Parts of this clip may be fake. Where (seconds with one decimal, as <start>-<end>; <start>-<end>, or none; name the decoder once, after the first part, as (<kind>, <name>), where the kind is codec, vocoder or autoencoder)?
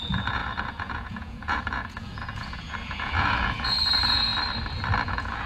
0.0-4.3 (vocoder, Vocos); 5.0-5.5